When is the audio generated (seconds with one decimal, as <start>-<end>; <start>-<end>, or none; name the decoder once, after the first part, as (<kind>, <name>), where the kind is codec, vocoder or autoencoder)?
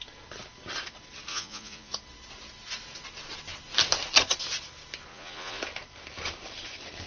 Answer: 1.3-1.9 (vocoder, Vocos); 5.1-5.6